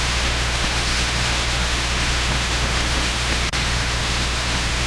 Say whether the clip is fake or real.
fake